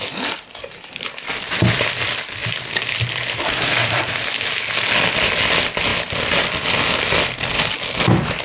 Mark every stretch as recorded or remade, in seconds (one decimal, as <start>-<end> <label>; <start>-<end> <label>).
0.0-8.4 recorded